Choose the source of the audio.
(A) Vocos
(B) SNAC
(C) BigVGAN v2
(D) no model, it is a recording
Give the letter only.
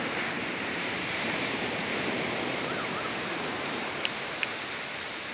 C